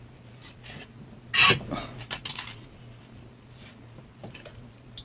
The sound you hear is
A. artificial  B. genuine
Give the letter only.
B